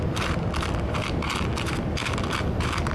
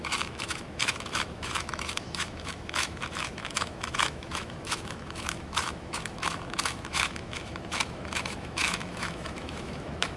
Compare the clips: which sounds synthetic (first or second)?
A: second